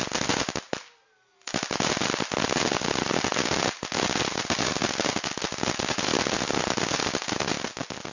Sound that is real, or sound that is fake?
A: real